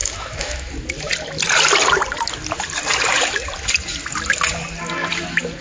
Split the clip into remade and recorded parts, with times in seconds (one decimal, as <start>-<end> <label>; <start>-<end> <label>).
0.0-0.7 remade; 0.7-5.6 recorded